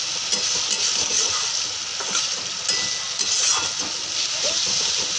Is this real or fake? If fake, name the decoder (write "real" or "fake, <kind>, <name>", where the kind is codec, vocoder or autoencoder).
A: real